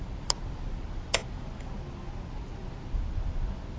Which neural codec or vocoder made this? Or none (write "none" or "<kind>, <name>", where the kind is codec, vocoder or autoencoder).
none